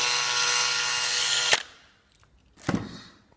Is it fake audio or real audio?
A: real